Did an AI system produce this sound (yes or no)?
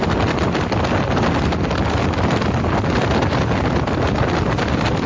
no